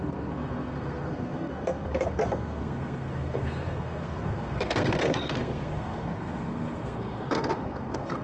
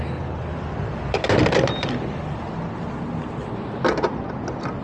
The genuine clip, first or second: second